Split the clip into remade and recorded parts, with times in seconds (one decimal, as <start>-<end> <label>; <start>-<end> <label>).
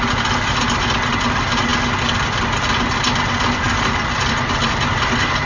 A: 0.0-5.5 recorded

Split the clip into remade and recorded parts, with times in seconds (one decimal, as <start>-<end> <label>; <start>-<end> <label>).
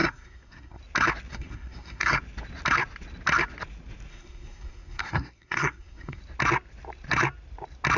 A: 0.0-0.8 remade; 0.8-1.3 recorded; 1.3-2.2 remade; 2.2-4.1 recorded; 4.1-6.2 remade; 6.2-8.0 recorded